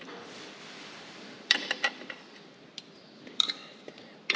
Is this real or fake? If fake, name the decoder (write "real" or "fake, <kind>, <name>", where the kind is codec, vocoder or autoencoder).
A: fake, vocoder, BigVGAN v2